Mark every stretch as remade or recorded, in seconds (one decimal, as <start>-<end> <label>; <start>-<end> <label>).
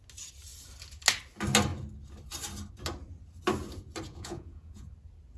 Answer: 0.0-4.1 recorded; 4.1-4.9 remade; 4.9-5.4 recorded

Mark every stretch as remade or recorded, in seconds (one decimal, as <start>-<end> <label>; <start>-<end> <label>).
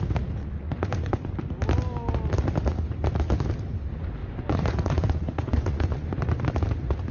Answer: 0.0-0.4 recorded; 0.4-1.3 remade; 1.3-4.2 recorded; 4.2-6.2 remade; 6.2-7.1 recorded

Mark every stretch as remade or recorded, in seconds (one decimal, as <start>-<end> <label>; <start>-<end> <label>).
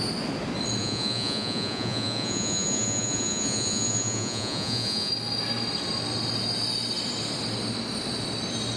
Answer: 0.0-0.8 recorded; 0.8-5.1 remade; 5.1-8.8 recorded